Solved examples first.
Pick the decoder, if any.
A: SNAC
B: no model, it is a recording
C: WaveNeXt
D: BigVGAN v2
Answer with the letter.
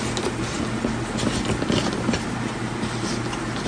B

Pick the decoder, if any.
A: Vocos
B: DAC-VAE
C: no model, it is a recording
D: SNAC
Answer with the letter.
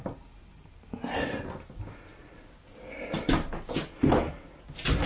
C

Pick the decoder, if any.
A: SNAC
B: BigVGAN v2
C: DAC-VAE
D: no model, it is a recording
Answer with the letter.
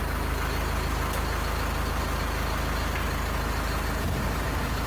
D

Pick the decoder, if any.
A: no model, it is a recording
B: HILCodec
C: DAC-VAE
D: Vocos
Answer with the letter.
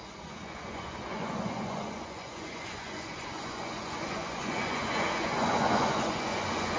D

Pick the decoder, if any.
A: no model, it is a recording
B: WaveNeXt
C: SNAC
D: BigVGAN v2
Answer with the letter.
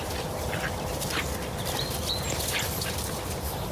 A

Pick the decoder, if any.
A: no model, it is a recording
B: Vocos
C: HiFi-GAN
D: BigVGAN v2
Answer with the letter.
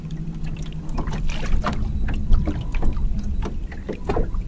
A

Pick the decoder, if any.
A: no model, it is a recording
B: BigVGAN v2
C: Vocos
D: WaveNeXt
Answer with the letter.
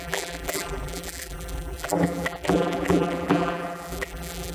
B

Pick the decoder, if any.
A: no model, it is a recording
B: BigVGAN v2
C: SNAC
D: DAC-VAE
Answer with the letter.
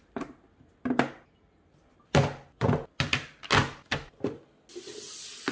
A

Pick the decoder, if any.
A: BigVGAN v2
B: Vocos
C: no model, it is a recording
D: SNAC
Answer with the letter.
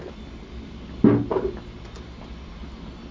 C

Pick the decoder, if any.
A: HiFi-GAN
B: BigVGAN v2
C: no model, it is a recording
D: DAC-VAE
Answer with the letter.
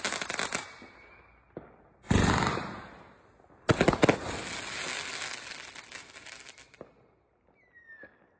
C